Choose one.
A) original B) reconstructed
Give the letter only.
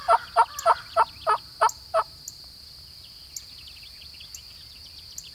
A